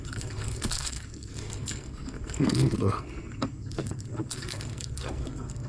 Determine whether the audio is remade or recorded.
remade